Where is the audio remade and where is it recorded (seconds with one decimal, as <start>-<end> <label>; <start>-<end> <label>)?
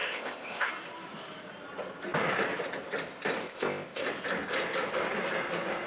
0.0-0.7 remade; 0.7-3.4 recorded; 3.4-4.0 remade; 4.0-5.9 recorded